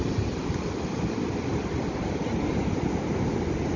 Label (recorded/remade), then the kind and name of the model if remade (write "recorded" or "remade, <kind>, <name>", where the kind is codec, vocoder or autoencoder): recorded